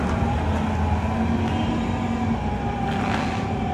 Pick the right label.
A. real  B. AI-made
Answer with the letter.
A